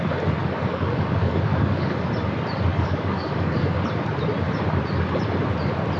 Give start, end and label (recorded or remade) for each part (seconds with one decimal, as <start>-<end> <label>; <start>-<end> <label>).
0.0-0.4 recorded; 0.4-2.1 remade; 2.1-2.7 recorded; 2.7-3.8 remade; 3.8-6.0 recorded